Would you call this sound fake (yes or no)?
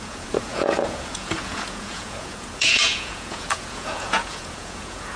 yes